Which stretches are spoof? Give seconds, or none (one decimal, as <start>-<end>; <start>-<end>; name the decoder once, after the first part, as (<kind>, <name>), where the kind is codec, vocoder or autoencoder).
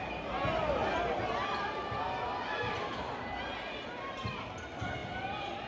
none